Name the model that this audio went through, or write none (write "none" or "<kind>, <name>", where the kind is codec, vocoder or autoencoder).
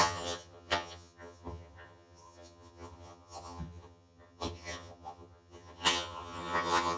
vocoder, HiFi-GAN